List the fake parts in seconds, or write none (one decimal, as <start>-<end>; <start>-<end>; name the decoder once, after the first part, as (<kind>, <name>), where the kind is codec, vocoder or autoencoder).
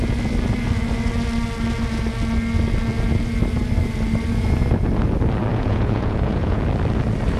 5.5-6.6 (vocoder, Vocos)